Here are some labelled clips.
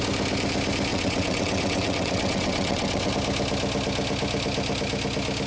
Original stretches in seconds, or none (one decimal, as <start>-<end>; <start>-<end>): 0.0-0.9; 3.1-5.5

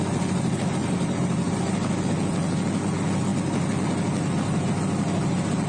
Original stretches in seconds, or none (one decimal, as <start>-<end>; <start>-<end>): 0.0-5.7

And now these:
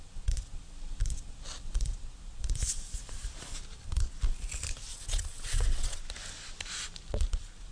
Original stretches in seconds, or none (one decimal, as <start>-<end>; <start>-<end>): 0.0-4.9; 6.0-7.7

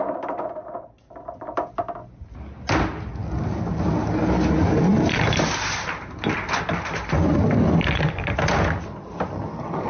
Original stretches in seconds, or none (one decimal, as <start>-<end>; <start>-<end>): 0.0-9.9

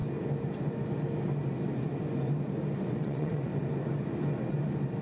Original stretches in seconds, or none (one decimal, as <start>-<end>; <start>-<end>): 0.0-3.0; 3.5-5.0

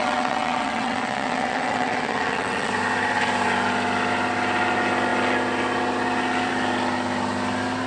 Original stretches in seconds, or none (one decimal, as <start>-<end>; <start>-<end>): 2.7-7.9

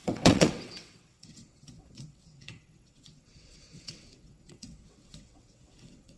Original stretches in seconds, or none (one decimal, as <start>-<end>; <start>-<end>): none